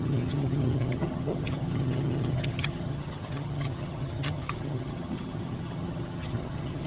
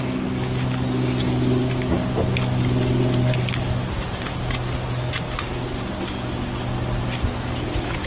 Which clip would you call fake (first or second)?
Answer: first